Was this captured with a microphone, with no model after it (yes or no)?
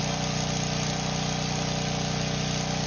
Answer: yes